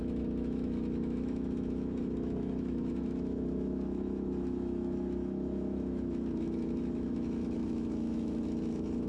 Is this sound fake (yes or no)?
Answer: yes